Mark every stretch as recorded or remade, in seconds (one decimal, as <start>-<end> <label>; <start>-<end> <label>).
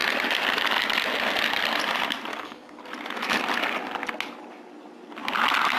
0.0-2.3 recorded; 2.3-2.8 remade; 2.8-5.8 recorded